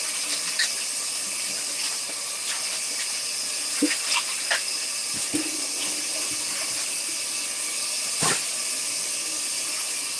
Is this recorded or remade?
recorded